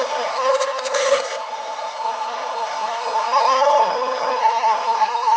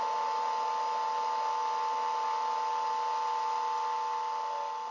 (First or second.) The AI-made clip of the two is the first